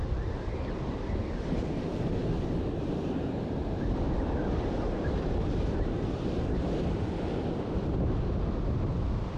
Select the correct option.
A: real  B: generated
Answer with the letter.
A